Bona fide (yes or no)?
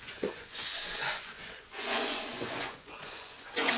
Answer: no